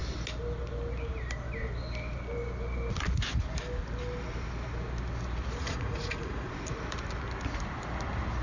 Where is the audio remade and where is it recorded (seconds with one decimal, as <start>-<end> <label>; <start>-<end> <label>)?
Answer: 0.0-5.6 recorded; 5.6-6.5 remade; 6.5-8.4 recorded